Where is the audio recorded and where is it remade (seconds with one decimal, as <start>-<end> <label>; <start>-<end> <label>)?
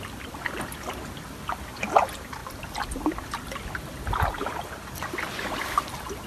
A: 0.0-6.3 recorded